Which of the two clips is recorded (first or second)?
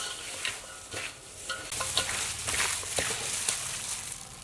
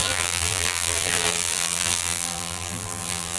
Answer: first